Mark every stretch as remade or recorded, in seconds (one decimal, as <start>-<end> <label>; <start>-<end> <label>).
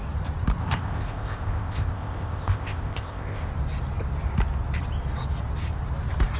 0.0-0.6 recorded; 0.6-3.5 remade; 3.5-6.4 recorded